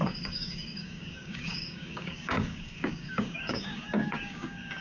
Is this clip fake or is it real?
fake